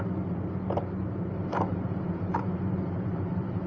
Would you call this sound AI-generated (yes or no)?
no